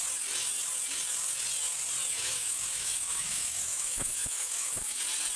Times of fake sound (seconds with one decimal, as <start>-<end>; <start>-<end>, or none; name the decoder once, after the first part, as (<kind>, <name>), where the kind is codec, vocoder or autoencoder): 2.1-5.0 (autoencoder, DAC-VAE)

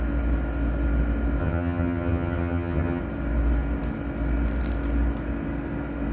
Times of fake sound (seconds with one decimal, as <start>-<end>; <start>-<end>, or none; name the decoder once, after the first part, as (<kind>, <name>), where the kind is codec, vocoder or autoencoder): 1.4-3.0 (vocoder, HiFi-GAN)

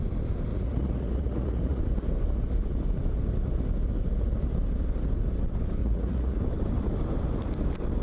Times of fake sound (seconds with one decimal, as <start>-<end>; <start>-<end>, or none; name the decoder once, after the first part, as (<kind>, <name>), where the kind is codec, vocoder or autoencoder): 0.5-1.8 (vocoder, Vocos); 5.8-6.4

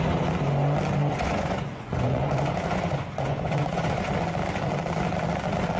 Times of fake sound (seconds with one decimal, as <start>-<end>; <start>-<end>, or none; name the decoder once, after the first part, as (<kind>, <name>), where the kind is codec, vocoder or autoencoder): 1.0-4.1 (vocoder, Vocos)

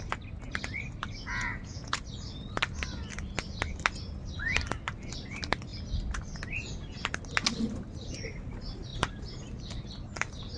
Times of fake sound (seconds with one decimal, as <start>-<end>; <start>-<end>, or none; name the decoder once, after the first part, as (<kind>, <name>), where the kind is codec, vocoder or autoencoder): 1.3-2.0 (vocoder, Vocos)